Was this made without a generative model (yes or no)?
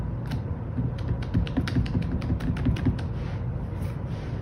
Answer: yes